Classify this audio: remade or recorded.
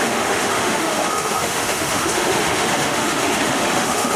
remade